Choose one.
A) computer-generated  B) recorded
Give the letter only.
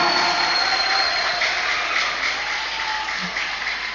B